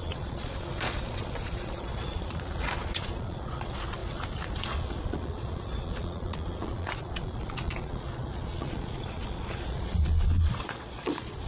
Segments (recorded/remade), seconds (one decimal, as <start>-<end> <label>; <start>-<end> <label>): 0.0-11.5 remade